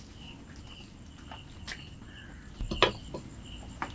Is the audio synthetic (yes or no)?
no